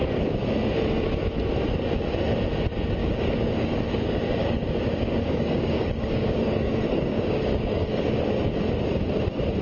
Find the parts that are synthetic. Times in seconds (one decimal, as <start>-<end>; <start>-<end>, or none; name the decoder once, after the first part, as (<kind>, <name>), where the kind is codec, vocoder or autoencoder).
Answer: 3.0-8.2 (codec, DAC)

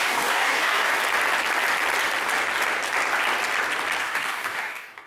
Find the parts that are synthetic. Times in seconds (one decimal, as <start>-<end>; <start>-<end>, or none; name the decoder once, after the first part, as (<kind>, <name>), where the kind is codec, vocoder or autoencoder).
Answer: 0.0-0.9 (codec, DAC); 4.0-5.1

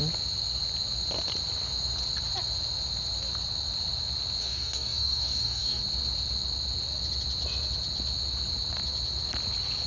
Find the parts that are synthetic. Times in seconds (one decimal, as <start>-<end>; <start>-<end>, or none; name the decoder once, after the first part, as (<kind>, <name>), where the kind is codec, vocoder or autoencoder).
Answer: 4.4-5.8 (codec, DAC)

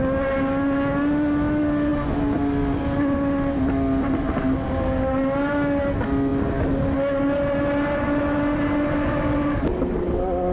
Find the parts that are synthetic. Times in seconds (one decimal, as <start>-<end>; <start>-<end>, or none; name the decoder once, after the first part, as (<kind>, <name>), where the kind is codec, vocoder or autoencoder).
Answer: none

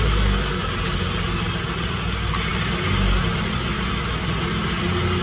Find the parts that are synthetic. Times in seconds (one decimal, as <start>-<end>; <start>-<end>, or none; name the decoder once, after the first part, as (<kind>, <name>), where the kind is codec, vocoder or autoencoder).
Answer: none

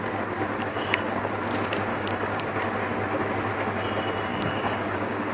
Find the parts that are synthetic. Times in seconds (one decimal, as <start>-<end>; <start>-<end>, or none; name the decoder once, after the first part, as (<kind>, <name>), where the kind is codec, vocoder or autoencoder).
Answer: 0.7-1.3 (codec, DAC); 1.9-2.4; 4.3-5.3

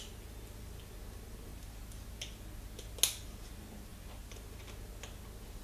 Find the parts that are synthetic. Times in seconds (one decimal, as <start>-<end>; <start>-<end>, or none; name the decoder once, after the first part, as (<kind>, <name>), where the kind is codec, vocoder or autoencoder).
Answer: none